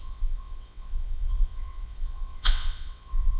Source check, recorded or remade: remade